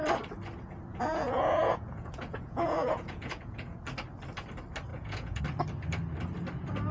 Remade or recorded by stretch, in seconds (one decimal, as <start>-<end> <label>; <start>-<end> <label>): 0.0-0.9 recorded; 0.9-3.8 remade; 3.8-4.9 recorded; 4.9-5.4 remade; 5.4-6.9 recorded